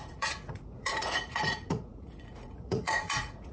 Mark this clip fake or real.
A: fake